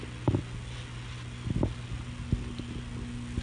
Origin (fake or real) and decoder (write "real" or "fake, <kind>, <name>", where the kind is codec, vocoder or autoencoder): real